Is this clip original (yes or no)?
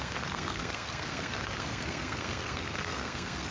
no